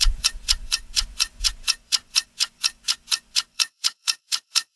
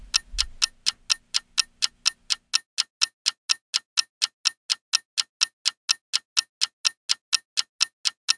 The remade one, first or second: first